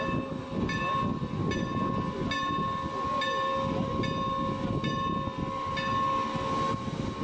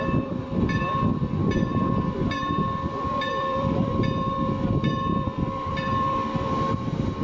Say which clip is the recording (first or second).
first